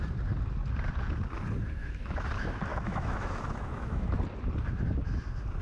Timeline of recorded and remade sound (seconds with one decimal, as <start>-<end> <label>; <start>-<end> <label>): 0.0-1.8 recorded; 1.8-2.3 remade; 2.3-2.7 recorded; 2.7-4.2 remade; 4.2-5.6 recorded